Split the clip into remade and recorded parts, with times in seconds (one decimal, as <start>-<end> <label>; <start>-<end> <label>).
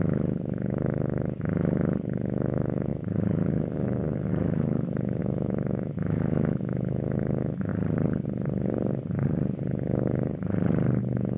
0.0-7.7 remade; 7.7-11.0 recorded; 11.0-11.4 remade